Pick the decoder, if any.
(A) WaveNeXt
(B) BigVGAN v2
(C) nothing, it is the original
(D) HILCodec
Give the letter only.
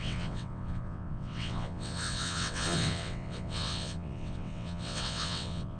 A